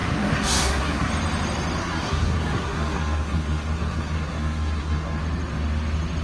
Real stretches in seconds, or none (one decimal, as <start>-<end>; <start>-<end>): 1.1-1.8; 5.2-6.2